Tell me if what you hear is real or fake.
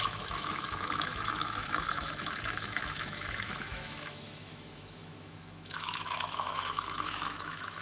fake